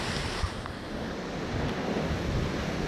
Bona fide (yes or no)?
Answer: yes